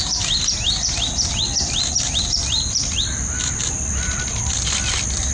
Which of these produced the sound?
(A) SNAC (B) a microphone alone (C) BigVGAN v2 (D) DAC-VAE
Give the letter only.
B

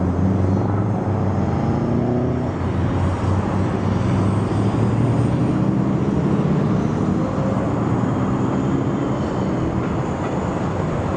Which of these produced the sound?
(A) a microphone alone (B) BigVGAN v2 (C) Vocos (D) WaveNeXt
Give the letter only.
A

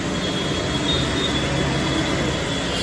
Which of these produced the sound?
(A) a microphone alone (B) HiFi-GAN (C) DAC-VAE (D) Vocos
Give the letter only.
A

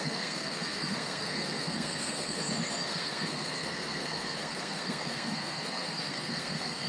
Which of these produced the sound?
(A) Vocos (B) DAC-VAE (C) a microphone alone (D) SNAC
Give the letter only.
D